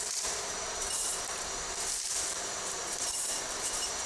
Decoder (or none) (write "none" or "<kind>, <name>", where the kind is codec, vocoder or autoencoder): vocoder, BigVGAN v2